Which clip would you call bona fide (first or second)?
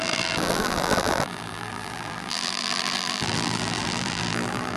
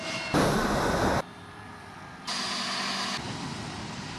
second